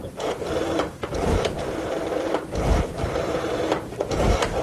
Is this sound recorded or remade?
remade